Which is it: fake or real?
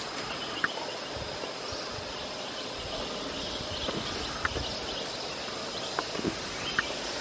real